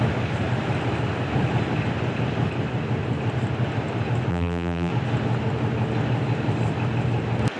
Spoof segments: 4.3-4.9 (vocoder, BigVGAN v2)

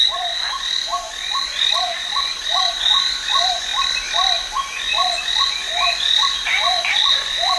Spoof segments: 0.0-3.7 (vocoder, Vocos); 4.5-7.6

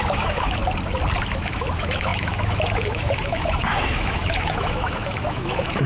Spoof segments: 0.0-0.6 (autoencoder, DAC-VAE); 1.3-5.9

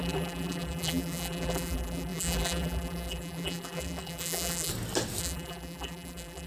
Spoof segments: 0.0-4.7 (vocoder, BigVGAN v2); 5.2-6.5

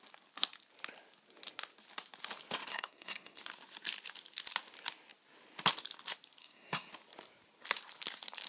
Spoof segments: 2.7-3.4 (codec, SNAC); 6.4-6.9

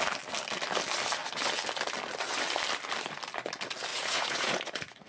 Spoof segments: 3.9-5.1 (vocoder, Vocos)